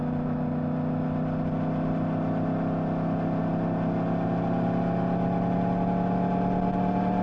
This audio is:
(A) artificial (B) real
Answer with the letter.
B